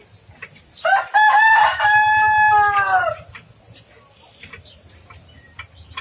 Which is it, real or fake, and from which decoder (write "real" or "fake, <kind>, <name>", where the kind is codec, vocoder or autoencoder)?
real